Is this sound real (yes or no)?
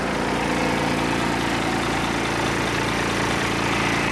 yes